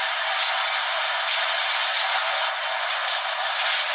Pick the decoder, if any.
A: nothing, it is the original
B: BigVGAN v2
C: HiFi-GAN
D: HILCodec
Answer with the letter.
A